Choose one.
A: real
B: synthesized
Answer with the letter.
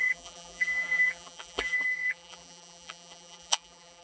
B